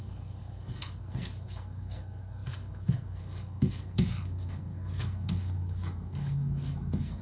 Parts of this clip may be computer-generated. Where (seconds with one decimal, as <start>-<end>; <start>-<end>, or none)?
0.0-7.2